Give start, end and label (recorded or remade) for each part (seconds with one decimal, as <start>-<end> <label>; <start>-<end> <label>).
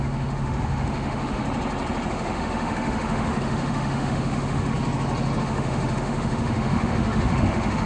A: 0.0-1.4 remade; 1.4-2.1 recorded; 2.1-4.7 remade; 4.7-5.4 recorded; 5.4-7.9 remade